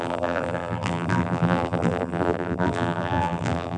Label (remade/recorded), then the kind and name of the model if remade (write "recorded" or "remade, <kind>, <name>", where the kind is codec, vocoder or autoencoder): remade, vocoder, BigVGAN v2